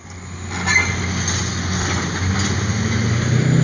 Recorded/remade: recorded